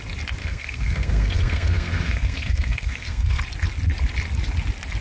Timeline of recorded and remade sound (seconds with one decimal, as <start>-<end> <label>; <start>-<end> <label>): 0.0-0.4 recorded; 0.4-3.4 remade; 3.4-5.0 recorded